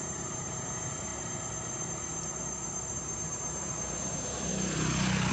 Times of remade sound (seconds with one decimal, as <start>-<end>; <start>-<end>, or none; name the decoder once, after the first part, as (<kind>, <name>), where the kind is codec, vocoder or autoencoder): 0.0-1.1 (vocoder, BigVGAN v2); 2.9-4.5